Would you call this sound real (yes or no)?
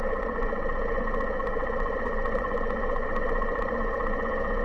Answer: no